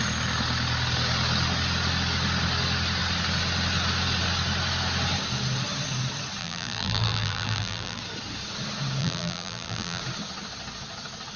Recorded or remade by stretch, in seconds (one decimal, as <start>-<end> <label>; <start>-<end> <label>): 0.0-6.4 recorded; 6.4-8.0 remade; 8.0-9.0 recorded; 9.0-10.0 remade; 10.0-11.4 recorded